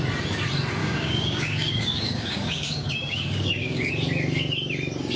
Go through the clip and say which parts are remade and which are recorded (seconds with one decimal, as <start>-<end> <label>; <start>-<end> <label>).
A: 0.0-0.8 recorded; 0.8-3.9 remade; 3.9-5.2 recorded